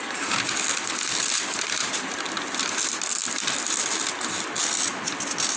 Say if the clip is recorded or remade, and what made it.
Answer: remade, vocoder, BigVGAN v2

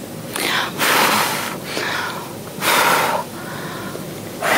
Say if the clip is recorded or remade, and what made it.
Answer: remade, vocoder, BigVGAN v2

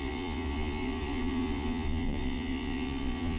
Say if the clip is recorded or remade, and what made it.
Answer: remade, vocoder, Vocos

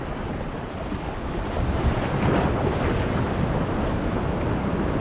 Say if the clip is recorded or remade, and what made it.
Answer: recorded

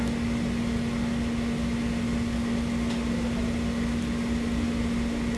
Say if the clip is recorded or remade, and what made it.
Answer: recorded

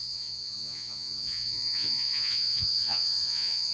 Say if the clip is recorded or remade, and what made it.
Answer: remade, vocoder, Vocos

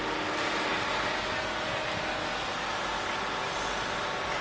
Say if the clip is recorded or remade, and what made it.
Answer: recorded